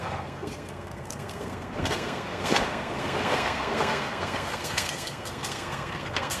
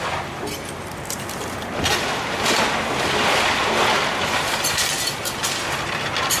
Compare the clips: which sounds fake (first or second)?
first